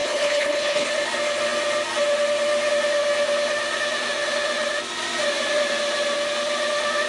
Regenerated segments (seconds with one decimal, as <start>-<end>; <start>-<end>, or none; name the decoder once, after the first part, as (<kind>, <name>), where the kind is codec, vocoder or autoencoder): 0.0-0.9 (codec, HILCodec)